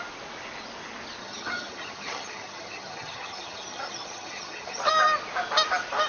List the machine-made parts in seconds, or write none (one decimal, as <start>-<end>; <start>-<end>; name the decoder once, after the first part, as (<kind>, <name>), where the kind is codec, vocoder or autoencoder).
1.2-4.9 (vocoder, HiFi-GAN)